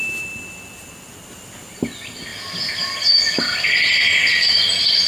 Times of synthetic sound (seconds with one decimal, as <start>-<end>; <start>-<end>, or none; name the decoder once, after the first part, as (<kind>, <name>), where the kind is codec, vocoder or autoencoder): none